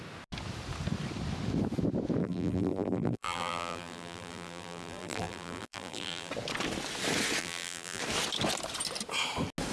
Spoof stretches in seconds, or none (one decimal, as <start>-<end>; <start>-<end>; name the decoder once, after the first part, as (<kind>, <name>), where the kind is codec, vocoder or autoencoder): 2.2-6.3 (vocoder, BigVGAN v2); 7.4-8.0